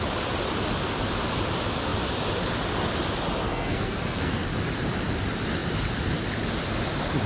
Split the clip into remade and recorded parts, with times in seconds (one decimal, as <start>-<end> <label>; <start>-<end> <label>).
0.0-3.4 recorded; 3.4-4.4 remade; 4.4-7.3 recorded